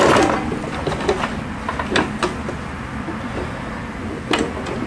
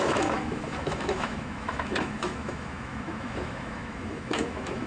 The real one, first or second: first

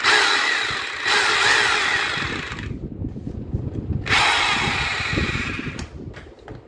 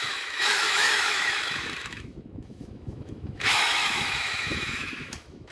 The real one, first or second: first